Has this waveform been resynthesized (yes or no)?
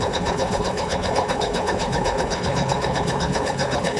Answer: yes